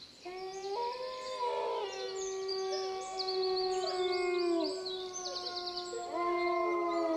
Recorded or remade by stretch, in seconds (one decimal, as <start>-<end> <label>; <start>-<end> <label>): 0.0-7.2 recorded